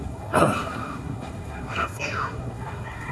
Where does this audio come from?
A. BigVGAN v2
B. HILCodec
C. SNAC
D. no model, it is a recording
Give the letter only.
C